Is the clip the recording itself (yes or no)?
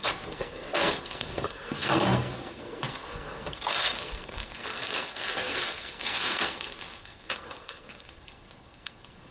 no